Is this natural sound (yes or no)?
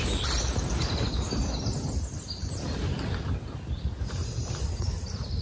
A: yes